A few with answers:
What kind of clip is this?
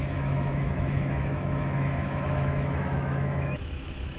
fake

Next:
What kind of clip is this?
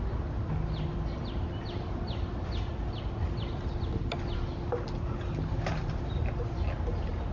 real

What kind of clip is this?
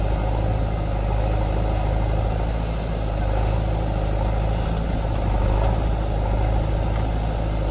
real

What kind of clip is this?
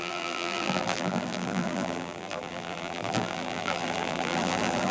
fake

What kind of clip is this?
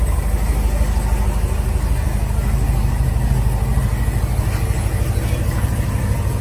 real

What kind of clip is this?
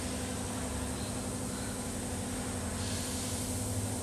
real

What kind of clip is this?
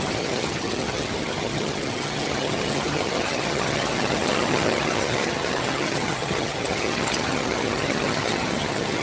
fake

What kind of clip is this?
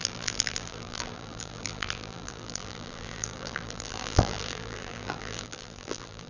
fake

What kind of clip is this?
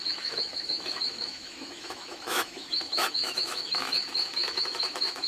fake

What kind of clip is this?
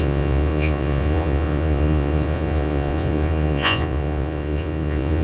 fake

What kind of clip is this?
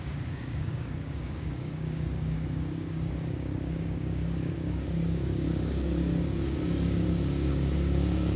fake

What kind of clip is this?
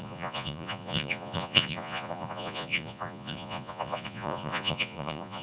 fake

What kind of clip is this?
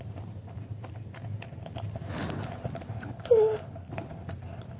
real